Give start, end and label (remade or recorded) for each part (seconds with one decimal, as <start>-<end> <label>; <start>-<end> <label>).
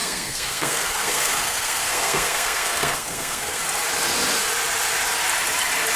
0.0-3.6 remade; 3.6-6.0 recorded